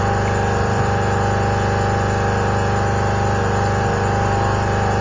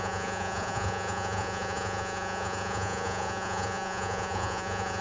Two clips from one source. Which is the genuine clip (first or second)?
first